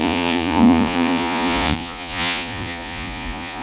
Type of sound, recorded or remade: remade